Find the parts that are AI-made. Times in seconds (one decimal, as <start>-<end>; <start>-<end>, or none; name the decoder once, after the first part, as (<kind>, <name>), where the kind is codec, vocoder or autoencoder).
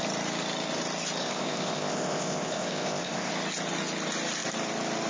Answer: 1.2-3.3 (codec, ZipCodec)